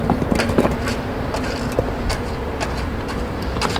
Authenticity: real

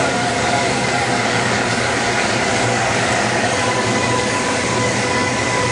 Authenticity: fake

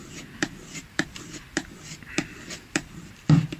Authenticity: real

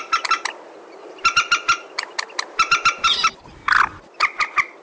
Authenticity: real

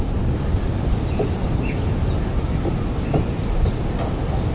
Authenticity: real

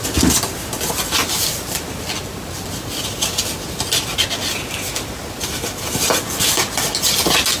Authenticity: real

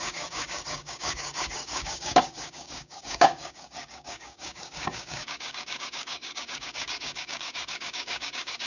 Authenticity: fake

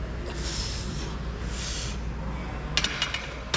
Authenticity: real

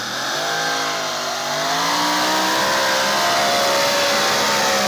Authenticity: real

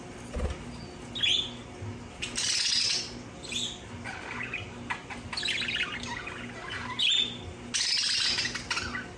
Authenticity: real